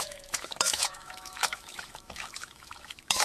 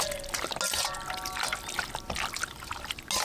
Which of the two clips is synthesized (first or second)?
first